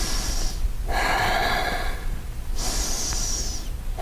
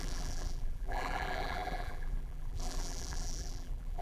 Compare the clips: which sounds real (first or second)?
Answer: first